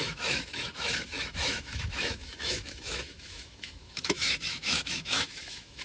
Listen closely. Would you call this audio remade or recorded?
remade